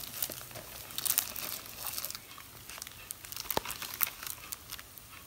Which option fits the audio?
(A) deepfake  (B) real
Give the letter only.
B